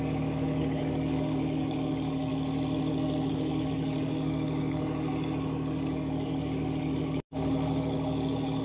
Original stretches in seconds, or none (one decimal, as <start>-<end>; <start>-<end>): 2.3-3.3